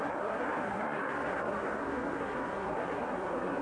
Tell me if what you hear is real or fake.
fake